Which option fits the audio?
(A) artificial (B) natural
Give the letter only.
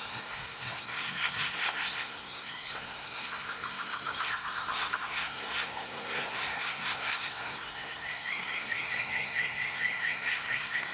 A